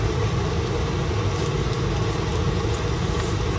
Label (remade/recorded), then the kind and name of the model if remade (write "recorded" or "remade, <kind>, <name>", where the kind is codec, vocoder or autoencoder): recorded